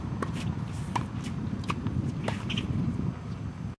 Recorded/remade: recorded